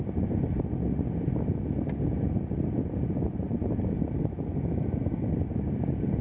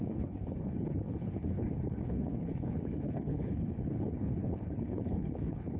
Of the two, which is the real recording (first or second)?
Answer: first